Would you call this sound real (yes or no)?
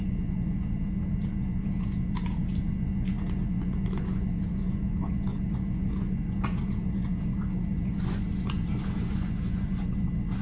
no